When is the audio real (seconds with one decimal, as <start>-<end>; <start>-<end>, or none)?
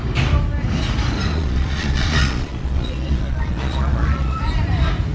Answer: 0.0-1.3; 4.4-5.1